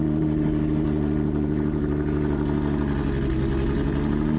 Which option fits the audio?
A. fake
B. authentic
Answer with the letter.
B